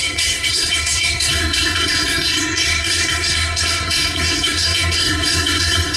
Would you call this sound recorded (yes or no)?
no